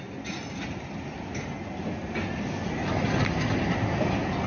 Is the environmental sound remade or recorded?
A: recorded